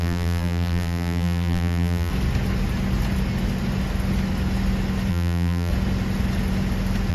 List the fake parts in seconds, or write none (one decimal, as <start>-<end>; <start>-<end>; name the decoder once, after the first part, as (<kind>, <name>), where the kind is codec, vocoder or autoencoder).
0.0-2.1 (vocoder, BigVGAN v2); 5.1-5.7